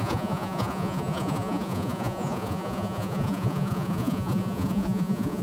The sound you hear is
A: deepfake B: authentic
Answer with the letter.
A